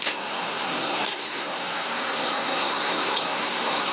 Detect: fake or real fake